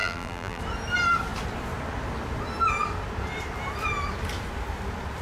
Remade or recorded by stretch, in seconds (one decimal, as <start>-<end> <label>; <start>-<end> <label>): 0.0-0.6 remade; 0.6-5.2 recorded